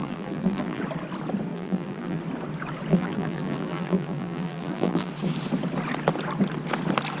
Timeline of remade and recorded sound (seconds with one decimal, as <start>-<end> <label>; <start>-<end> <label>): 0.0-0.8 remade; 0.8-1.5 recorded; 1.5-2.2 remade; 2.2-2.9 recorded; 2.9-5.1 remade; 5.1-7.2 recorded